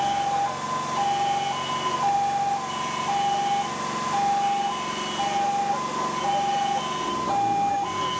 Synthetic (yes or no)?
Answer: no